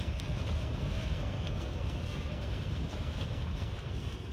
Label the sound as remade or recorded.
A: remade